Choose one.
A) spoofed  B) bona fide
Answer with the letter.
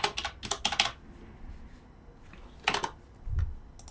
B